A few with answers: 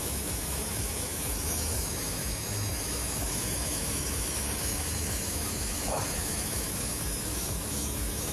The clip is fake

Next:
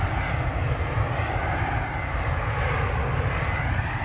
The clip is real